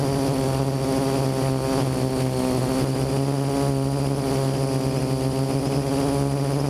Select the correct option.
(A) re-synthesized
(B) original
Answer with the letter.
B